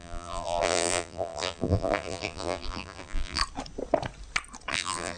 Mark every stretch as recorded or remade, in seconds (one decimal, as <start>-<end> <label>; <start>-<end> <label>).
0.0-3.4 remade; 3.4-4.7 recorded; 4.7-5.2 remade